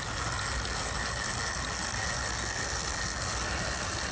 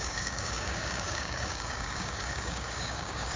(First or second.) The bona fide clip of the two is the first